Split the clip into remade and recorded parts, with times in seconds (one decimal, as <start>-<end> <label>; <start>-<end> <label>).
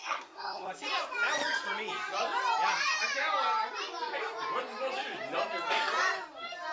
0.0-0.7 remade; 0.7-6.7 recorded